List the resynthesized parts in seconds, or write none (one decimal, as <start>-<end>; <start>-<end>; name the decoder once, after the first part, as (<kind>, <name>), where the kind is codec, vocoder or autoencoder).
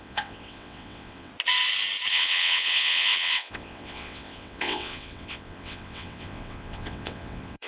0.0-1.3 (vocoder, WaveNeXt); 2.1-7.7